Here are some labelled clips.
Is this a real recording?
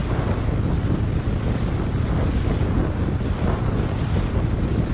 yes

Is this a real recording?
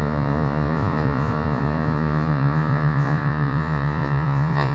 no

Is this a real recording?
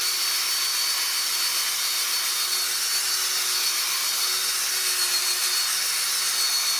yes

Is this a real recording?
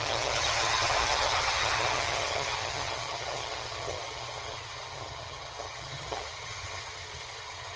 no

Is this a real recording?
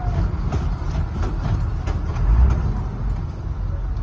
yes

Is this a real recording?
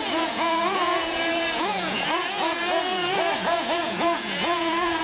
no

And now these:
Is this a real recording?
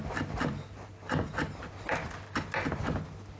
yes